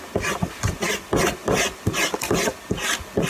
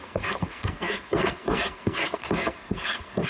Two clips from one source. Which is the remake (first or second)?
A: second